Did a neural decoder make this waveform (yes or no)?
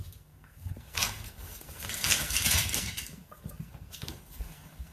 yes